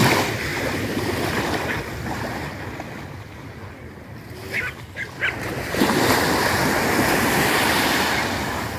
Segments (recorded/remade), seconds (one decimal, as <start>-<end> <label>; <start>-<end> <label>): 0.0-0.5 recorded; 0.5-1.4 remade; 1.4-8.8 recorded